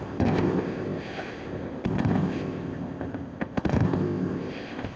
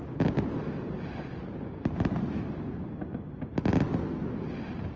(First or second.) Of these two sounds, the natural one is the second